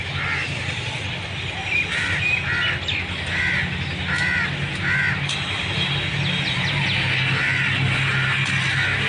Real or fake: real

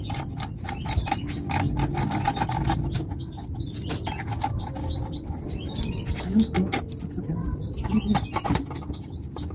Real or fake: real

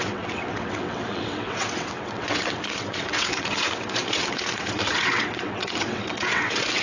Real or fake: fake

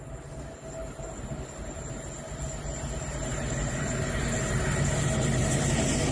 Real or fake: real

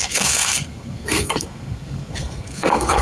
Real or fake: fake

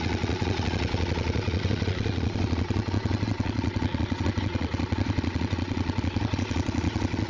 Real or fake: fake